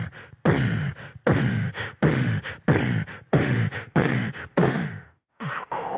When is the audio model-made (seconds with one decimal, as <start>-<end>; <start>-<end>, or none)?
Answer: 1.5-2.5; 3.3-6.0